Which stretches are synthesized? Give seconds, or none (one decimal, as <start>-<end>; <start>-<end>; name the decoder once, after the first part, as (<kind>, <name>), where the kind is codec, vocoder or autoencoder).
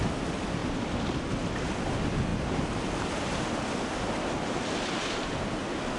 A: none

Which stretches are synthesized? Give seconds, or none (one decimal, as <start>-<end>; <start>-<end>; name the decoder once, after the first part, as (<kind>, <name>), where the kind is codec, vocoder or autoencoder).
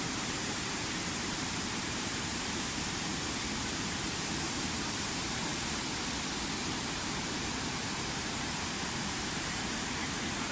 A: 0.0-3.1 (vocoder, BigVGAN v2); 4.1-5.5; 6.9-10.5